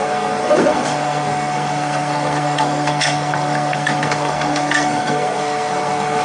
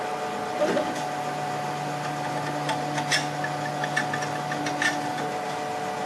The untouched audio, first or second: second